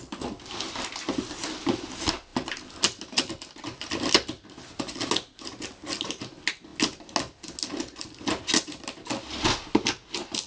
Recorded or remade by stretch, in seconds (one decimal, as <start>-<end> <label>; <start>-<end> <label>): 0.0-10.5 recorded